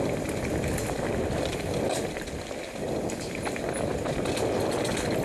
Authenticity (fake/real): real